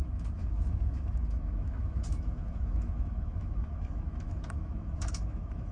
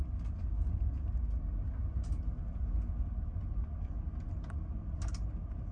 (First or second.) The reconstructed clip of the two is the first